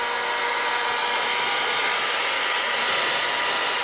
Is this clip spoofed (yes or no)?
no